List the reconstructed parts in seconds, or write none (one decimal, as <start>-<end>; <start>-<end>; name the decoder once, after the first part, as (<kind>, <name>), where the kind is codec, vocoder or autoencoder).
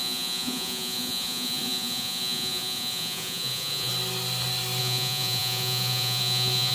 0.0-3.9 (vocoder, Vocos); 4.8-6.7